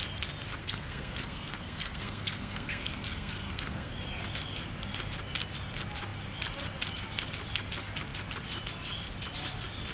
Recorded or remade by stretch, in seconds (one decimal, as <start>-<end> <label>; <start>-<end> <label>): 0.0-0.6 recorded; 0.6-4.0 remade; 4.0-9.9 recorded